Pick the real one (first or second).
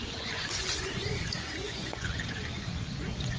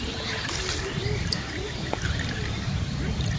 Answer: second